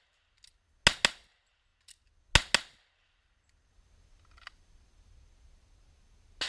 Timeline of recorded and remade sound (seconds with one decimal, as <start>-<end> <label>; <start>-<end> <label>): 0.0-6.5 recorded